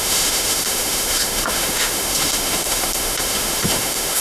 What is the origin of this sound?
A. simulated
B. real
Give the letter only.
A